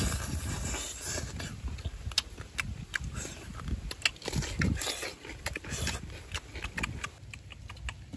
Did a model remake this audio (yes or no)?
no